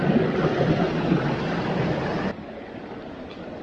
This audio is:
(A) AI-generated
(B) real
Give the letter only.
B